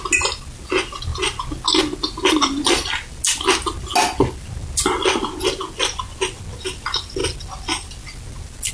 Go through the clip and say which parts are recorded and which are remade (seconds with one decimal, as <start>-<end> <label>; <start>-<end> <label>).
0.0-8.7 recorded